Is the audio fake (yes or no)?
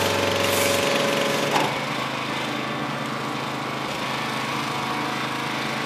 no